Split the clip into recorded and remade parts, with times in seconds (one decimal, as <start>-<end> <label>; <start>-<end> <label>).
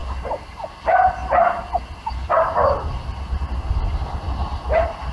0.0-5.1 recorded